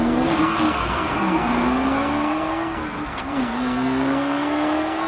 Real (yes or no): no